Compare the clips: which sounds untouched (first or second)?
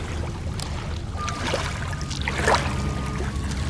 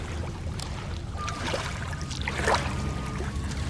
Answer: first